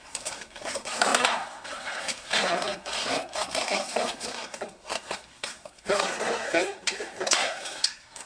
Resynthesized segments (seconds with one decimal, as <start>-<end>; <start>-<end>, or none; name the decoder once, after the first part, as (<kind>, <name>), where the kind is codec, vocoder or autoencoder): 0.0-8.3 (codec, SNAC)